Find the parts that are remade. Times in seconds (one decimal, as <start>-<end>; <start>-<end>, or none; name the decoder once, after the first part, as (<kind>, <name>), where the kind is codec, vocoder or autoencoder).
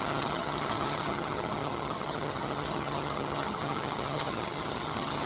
0.0-5.3 (vocoder, HiFi-GAN)